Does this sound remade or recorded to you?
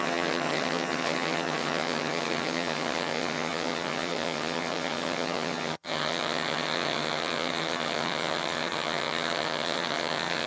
remade